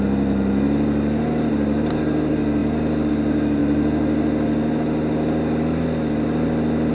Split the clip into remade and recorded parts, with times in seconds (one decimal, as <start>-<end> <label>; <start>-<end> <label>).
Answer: 0.0-6.9 recorded